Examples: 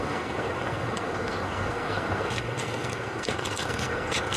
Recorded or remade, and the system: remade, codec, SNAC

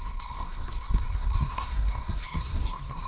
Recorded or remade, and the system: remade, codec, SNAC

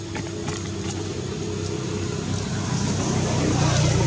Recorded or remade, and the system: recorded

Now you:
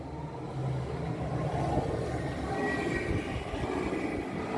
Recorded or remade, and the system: recorded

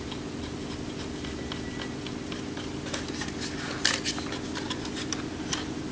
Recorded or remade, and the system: recorded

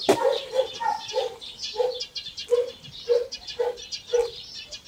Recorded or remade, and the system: recorded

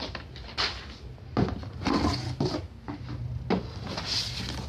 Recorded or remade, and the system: recorded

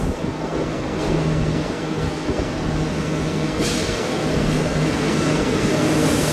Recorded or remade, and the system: remade, codec, SNAC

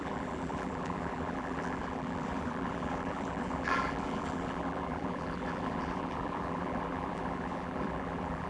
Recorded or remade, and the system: remade, vocoder, BigVGAN v2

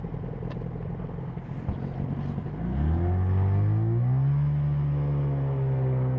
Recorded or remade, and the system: recorded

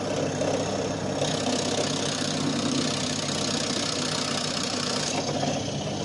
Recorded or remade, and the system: recorded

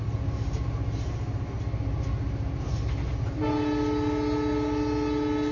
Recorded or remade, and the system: recorded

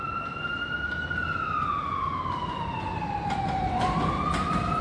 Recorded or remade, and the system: recorded